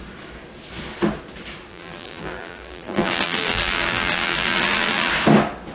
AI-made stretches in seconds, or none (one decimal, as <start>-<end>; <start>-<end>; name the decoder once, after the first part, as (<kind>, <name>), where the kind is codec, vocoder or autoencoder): 1.7-5.1 (vocoder, BigVGAN v2)